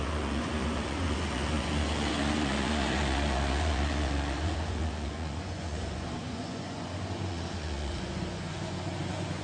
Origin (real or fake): fake